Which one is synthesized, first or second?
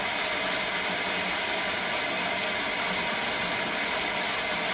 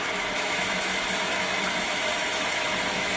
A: second